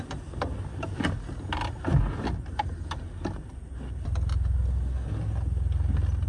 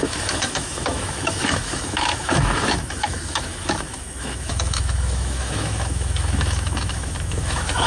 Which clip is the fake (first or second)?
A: second